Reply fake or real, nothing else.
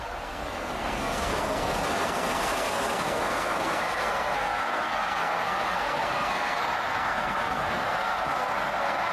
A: fake